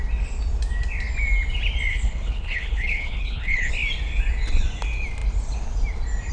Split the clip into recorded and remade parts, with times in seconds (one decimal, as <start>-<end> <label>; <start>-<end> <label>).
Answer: 0.0-1.9 recorded; 1.9-3.7 remade; 3.7-6.3 recorded